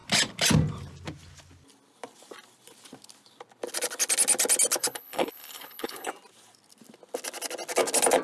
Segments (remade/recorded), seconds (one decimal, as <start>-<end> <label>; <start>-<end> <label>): 0.0-4.8 recorded; 4.8-6.1 remade; 6.1-8.2 recorded